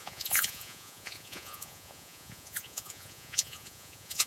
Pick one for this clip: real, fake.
fake